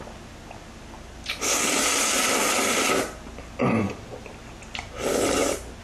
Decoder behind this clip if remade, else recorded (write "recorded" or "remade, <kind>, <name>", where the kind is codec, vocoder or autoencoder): recorded